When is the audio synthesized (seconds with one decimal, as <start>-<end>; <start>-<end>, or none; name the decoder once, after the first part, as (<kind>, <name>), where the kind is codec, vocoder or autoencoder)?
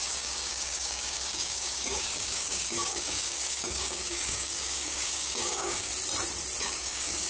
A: 0.0-5.9 (codec, DAC); 6.6-7.3